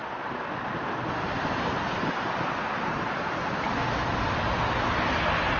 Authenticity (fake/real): real